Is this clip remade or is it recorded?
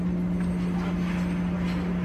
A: recorded